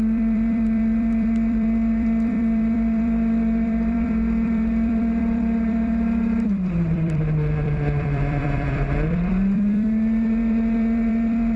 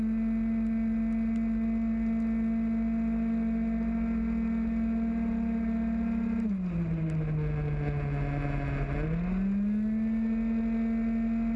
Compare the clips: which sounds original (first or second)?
second